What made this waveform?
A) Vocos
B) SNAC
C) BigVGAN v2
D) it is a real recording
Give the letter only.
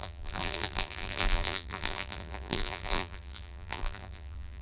C